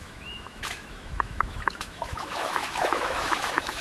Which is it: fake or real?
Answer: fake